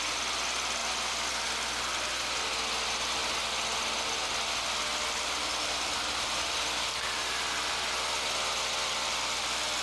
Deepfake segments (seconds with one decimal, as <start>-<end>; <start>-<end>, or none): none

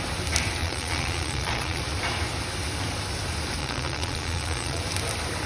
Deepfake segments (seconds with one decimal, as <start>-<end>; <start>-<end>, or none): 0.6-1.8; 3.6-4.8